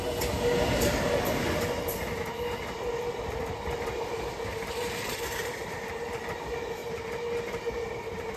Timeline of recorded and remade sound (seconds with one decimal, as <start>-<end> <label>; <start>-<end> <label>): 0.0-3.0 recorded; 3.0-6.8 remade; 6.8-8.4 recorded